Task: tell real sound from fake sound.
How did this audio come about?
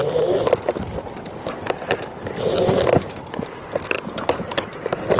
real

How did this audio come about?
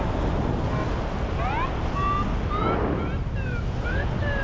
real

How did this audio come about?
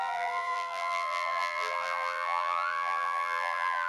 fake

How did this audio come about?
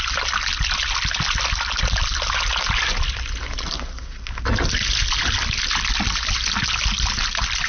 real